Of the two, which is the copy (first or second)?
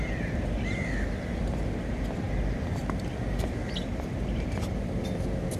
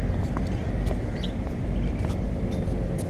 first